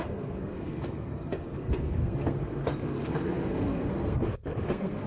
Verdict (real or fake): fake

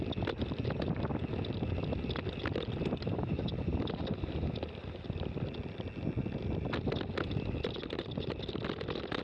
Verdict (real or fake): real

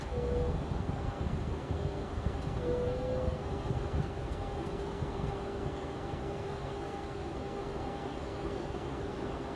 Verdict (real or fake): fake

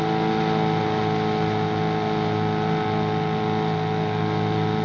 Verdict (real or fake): real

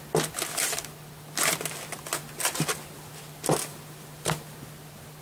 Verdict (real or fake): real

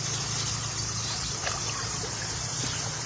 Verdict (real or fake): real